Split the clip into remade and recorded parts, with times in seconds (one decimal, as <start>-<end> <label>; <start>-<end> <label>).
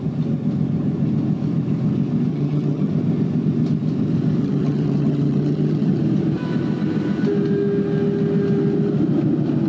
0.0-2.3 recorded; 2.3-2.9 remade; 2.9-4.4 recorded; 4.4-6.0 remade; 6.0-9.7 recorded